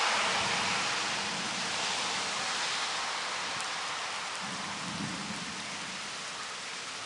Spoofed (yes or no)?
no